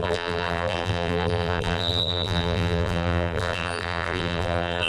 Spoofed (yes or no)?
yes